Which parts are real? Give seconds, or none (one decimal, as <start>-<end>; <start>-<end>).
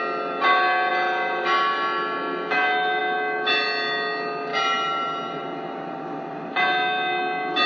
0.0-7.7